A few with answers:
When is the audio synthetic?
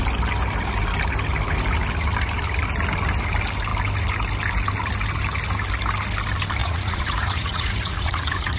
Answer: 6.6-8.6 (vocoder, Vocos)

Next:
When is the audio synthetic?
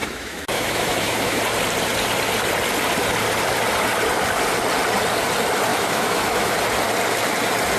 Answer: 0.0-1.4 (autoencoder, DAC-VAE); 5.7-6.5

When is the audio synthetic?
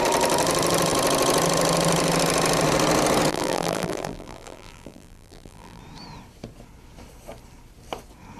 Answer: 3.3-5.8 (vocoder, BigVGAN v2)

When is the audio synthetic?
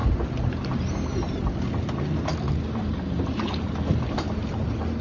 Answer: none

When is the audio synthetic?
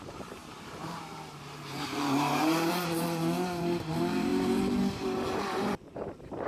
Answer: 0.0-6.5 (vocoder, BigVGAN v2)